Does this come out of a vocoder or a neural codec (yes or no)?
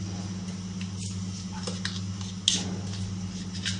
no